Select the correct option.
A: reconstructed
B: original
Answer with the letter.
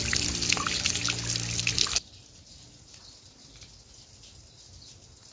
B